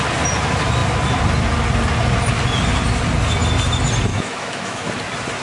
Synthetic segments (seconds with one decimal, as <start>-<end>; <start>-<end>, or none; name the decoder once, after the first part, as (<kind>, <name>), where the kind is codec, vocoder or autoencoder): 4.1-4.9 (autoencoder, DAC-VAE)